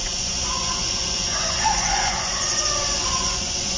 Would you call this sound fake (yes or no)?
yes